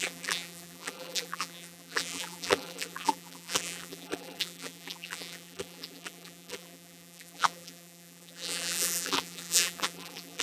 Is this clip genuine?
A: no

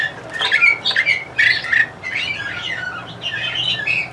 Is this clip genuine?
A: yes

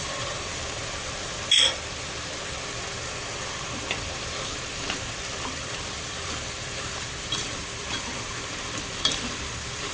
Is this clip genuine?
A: no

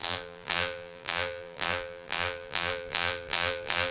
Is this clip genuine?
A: no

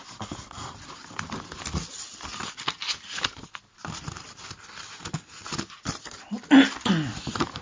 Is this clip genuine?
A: yes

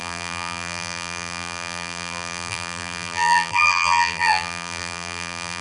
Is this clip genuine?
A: no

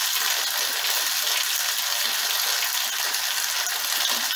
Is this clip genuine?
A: yes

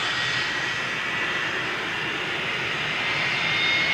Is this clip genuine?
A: yes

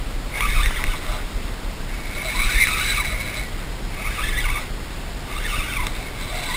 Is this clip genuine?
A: yes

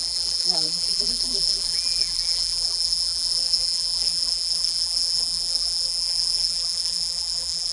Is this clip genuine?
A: no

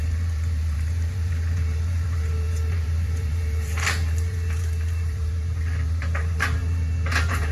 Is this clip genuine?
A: no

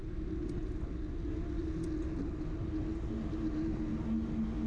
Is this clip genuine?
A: yes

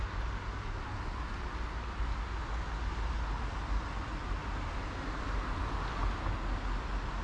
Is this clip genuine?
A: yes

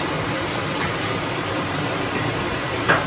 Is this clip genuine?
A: no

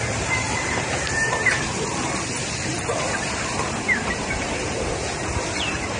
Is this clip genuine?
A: no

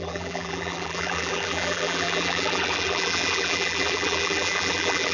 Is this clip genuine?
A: no